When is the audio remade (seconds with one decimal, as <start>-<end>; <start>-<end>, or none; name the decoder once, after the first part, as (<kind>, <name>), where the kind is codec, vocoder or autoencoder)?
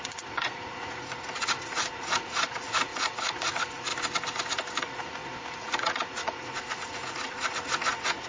0.0-3.9 (vocoder, Vocos); 4.8-8.3